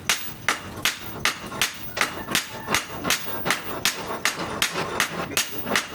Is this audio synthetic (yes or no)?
no